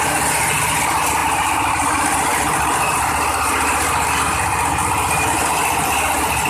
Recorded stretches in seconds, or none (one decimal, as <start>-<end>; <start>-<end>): 0.0-6.5

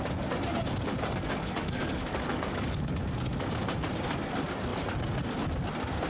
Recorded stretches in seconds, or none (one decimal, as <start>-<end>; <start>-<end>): 0.0-0.9; 3.0-6.1

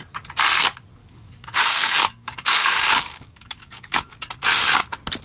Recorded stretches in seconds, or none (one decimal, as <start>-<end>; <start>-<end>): 0.0-1.0; 4.1-5.2

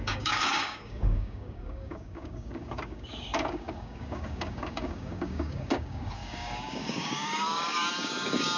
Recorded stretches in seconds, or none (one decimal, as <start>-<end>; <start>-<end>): none

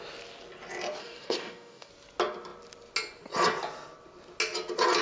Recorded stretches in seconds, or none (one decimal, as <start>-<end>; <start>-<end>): 0.0-1.0; 1.9-5.0